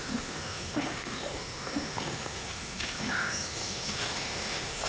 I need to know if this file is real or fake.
fake